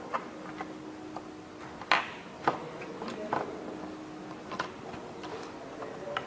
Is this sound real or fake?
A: real